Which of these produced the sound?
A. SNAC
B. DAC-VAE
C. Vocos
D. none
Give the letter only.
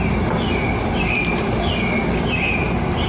D